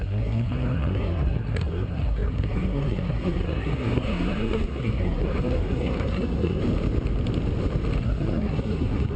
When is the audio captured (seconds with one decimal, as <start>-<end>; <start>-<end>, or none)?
6.6-8.0